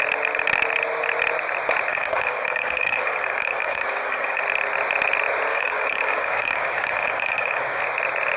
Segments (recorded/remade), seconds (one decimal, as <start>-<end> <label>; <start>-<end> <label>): 0.0-1.9 recorded; 1.9-4.4 remade; 4.4-5.5 recorded; 5.5-7.8 remade; 7.8-8.4 recorded

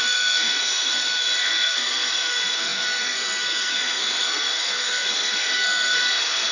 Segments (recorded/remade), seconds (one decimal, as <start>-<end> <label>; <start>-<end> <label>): 0.0-6.5 remade

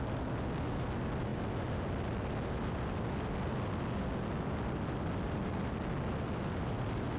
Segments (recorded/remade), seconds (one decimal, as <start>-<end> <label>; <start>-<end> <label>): 0.0-7.2 recorded

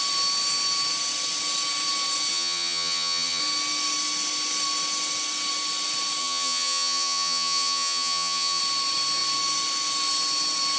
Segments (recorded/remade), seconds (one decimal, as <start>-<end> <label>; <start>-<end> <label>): 0.0-2.3 recorded; 2.3-3.4 remade; 3.4-6.2 recorded; 6.2-8.6 remade; 8.6-10.8 recorded

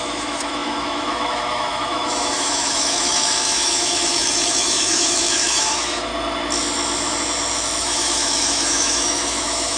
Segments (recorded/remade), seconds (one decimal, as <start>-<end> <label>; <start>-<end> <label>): 0.0-6.1 remade; 6.1-7.8 recorded; 7.8-9.8 remade

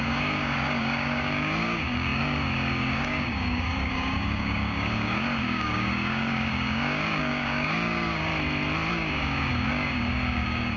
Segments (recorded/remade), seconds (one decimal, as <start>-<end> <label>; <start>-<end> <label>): 0.0-8.3 remade; 8.3-8.9 recorded; 8.9-10.8 remade